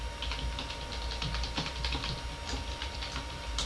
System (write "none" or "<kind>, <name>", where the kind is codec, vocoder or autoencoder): none